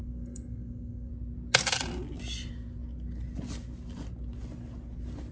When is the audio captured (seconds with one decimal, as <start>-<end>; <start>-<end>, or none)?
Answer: 1.1-5.3